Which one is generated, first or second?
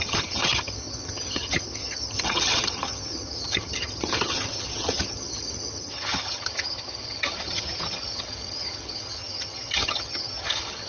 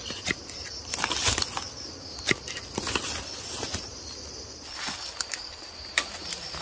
first